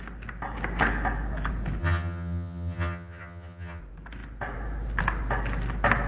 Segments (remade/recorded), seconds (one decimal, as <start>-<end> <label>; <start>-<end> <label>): 0.0-1.8 recorded; 1.8-3.8 remade; 3.8-6.1 recorded